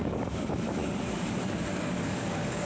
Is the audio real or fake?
fake